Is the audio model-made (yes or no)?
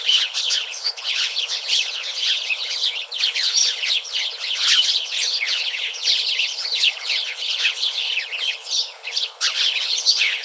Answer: yes